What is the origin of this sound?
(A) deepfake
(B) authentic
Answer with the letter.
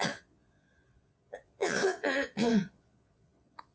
A